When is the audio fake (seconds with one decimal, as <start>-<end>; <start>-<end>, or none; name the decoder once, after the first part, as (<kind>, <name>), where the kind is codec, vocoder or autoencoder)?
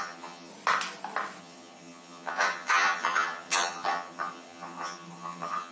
0.0-0.5 (vocoder, HiFi-GAN); 1.4-5.7